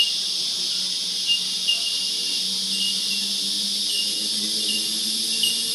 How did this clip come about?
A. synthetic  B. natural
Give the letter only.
B